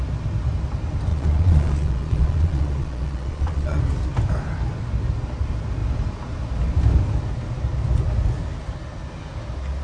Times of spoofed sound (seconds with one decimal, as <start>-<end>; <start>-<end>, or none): 1.1-3.8